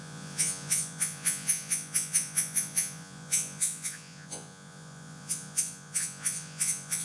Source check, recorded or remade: remade